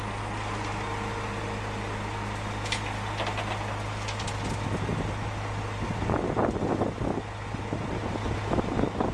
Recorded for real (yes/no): yes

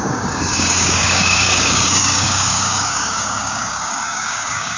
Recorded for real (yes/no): no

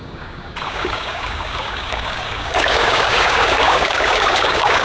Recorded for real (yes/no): no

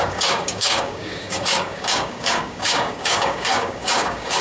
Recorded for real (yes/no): no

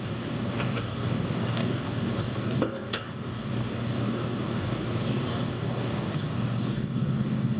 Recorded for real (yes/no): no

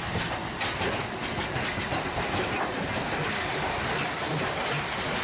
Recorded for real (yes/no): yes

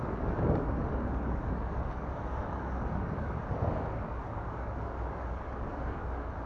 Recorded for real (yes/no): no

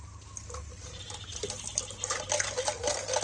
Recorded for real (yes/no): yes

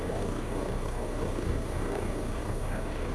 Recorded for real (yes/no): no